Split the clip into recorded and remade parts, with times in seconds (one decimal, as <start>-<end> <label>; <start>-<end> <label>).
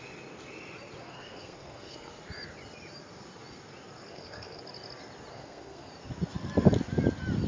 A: 0.0-1.0 recorded; 1.0-2.1 remade; 2.1-4.1 recorded; 4.1-4.6 remade; 4.6-5.3 recorded; 5.3-5.9 remade; 5.9-7.5 recorded